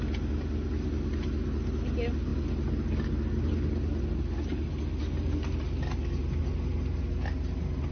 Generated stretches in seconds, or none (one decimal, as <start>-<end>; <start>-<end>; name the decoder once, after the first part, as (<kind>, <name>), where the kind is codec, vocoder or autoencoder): none